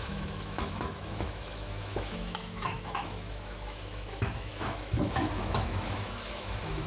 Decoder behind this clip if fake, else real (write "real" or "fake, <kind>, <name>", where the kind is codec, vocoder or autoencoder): fake, autoencoder, DAC-VAE